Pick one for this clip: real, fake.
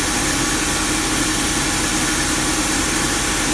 real